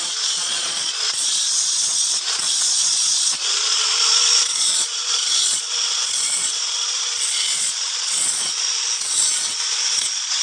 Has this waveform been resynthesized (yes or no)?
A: yes